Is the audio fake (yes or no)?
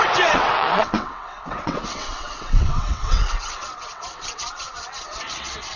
yes